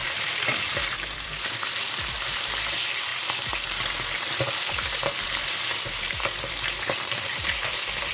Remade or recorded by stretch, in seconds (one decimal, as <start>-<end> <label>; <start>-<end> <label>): 0.0-8.1 remade